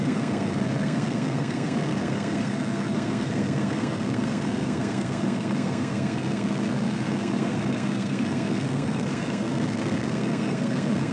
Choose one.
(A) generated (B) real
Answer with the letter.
A